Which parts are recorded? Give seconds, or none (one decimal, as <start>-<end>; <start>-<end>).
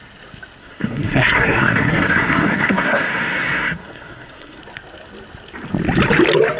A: 0.0-0.6; 4.6-6.6